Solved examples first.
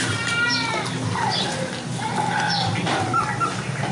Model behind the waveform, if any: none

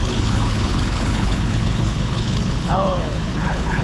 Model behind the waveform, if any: codec, HILCodec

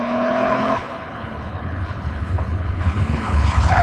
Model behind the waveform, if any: codec, HILCodec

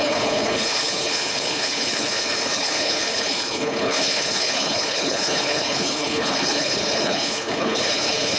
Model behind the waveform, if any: codec, HILCodec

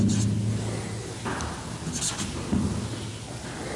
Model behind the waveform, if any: none